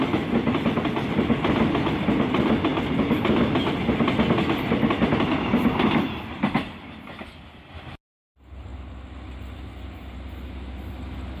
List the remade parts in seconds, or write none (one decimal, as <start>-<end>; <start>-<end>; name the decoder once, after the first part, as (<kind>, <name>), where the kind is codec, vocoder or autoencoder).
none